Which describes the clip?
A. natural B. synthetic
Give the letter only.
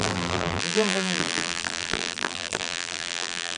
B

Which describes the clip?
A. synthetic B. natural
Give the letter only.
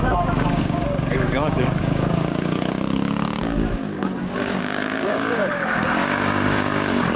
A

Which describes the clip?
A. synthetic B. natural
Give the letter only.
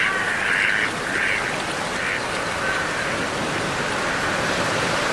B